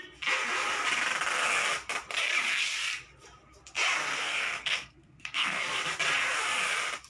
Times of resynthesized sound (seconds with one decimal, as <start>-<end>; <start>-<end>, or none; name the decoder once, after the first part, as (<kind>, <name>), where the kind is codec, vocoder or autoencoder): 4.1-5.6 (codec, SNAC)